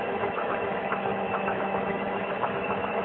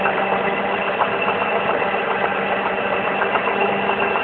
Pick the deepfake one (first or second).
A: first